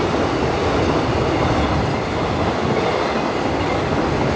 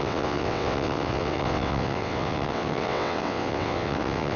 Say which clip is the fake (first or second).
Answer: second